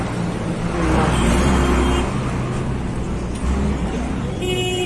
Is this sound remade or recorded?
recorded